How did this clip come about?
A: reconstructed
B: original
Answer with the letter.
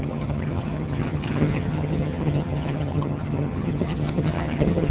A